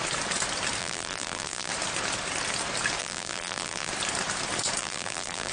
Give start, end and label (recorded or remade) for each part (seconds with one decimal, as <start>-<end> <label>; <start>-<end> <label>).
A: 0.0-0.8 recorded; 0.8-1.7 remade; 1.7-3.0 recorded; 3.0-3.9 remade; 3.9-4.8 recorded; 4.8-5.5 remade